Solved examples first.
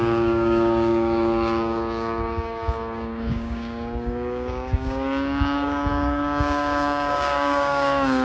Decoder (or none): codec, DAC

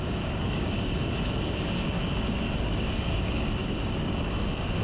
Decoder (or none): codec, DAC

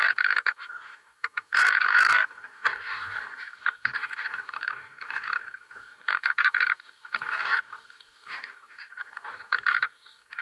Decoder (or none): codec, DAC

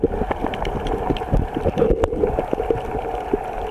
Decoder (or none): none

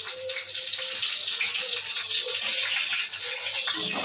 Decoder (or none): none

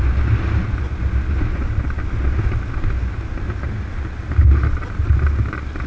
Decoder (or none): none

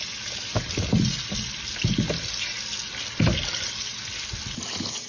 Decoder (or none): none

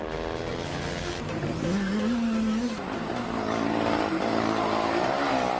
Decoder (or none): none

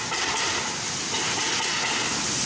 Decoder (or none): none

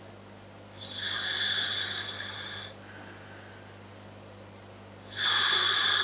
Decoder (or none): none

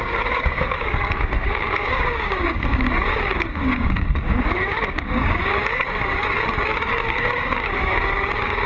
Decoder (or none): codec, DAC